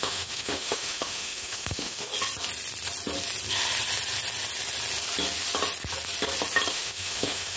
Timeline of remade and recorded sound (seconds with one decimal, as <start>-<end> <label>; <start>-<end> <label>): 0.0-2.1 remade; 2.1-6.7 recorded; 6.7-7.6 remade